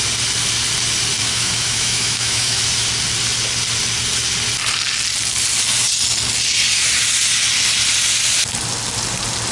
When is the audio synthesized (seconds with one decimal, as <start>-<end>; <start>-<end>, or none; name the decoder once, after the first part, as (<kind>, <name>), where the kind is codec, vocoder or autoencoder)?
1.2-2.6 (autoencoder, DAC-VAE)